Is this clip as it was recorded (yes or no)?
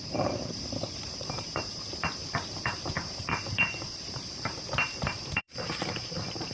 no